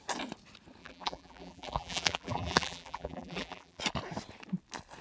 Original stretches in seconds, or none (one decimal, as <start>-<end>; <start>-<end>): 0.0-0.8; 3.8-5.0